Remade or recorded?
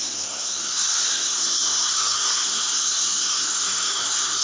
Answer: remade